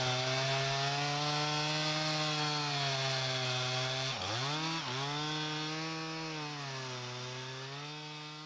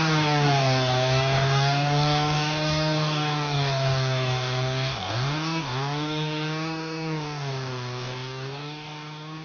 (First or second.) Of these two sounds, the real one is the first